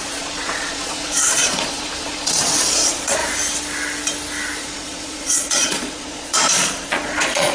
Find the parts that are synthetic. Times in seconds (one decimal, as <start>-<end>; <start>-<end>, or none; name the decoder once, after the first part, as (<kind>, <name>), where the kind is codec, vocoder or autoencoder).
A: 0.0-3.2 (vocoder, Vocos); 4.6-7.5

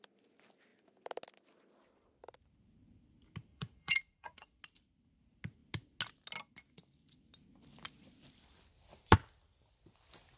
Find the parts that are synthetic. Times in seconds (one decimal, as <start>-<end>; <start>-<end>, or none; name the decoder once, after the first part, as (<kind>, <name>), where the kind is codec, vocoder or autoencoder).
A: 3.5-4.6 (vocoder, Vocos)

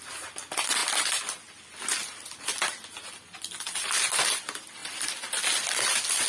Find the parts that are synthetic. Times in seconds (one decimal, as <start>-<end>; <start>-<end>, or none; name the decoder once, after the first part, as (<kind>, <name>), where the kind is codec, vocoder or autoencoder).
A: none

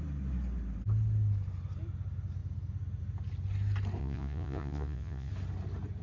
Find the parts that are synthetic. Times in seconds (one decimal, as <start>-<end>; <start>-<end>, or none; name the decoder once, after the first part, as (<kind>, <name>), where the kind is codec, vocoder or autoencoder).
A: 4.0-5.3 (vocoder, Vocos)

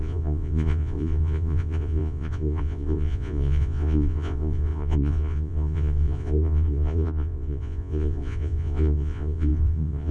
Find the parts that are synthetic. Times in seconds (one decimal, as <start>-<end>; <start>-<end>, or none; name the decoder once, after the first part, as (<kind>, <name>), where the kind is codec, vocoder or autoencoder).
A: 0.0-10.1 (vocoder, Vocos)